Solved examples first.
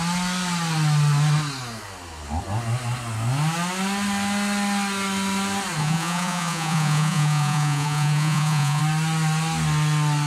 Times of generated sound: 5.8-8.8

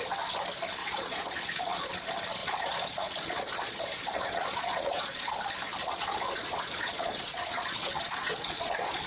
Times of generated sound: 0.8-1.8; 2.4-5.3; 5.8-9.1

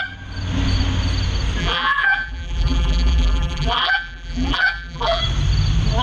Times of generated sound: 1.6-5.2

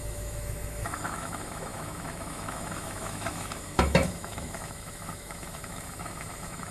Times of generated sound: 0.0-6.7